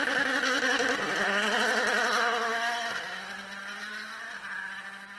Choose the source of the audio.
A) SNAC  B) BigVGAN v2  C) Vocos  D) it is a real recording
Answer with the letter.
D